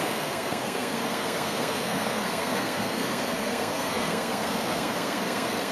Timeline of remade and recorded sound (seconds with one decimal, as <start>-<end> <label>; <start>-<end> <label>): 0.0-5.7 remade